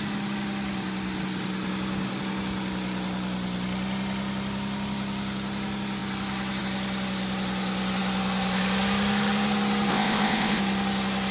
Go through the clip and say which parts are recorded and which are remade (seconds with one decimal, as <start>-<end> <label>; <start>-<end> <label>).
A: 0.0-9.9 recorded; 9.9-10.6 remade; 10.6-11.3 recorded